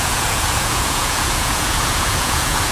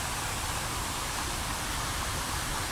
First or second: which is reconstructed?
first